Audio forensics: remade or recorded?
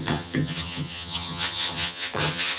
remade